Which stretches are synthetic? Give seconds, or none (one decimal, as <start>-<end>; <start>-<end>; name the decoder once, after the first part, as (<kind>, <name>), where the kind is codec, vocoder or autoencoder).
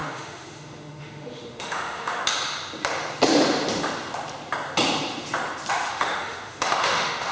0.0-2.2 (autoencoder, DAC-VAE); 5.7-7.3